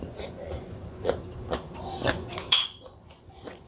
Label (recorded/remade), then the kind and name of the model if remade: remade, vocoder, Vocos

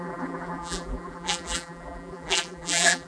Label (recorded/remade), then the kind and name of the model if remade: remade, vocoder, BigVGAN v2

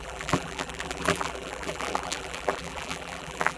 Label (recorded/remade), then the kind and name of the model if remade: remade, vocoder, BigVGAN v2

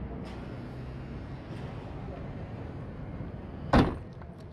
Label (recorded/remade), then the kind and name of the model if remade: recorded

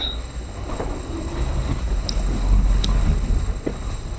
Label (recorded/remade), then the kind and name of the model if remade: remade, codec, HILCodec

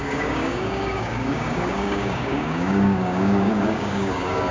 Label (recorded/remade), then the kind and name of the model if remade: remade, codec, DAC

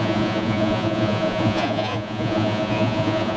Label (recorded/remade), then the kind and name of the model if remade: remade, vocoder, Vocos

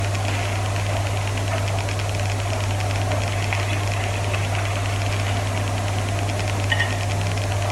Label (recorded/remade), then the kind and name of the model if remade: recorded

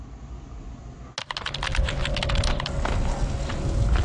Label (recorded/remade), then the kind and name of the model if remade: recorded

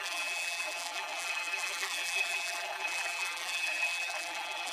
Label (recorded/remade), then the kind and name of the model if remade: remade, vocoder, BigVGAN v2